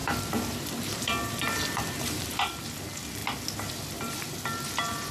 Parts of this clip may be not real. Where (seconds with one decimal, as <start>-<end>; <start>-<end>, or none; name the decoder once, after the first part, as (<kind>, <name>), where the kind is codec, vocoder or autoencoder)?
none